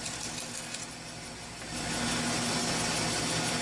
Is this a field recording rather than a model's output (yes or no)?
yes